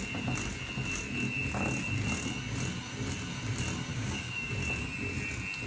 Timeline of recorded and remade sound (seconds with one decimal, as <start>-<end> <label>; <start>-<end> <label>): 0.0-3.9 recorded; 3.9-4.5 remade; 4.5-5.7 recorded